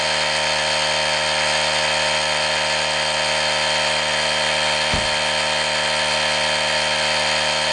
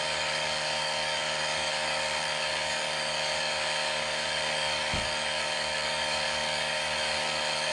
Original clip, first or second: first